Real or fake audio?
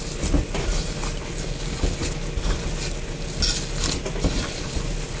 real